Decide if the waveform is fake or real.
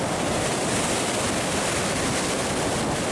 real